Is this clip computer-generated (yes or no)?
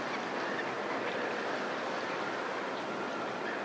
no